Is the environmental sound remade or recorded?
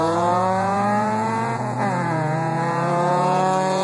remade